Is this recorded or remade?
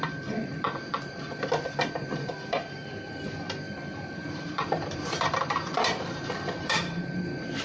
remade